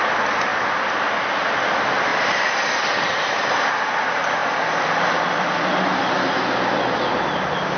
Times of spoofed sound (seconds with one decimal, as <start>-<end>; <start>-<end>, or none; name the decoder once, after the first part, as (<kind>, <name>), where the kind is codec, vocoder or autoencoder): 2.1-3.7 (vocoder, BigVGAN v2)